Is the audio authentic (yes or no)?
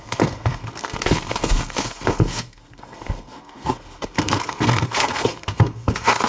no